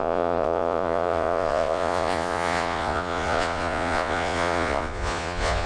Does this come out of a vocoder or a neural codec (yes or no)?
yes